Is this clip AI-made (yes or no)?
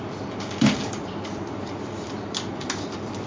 no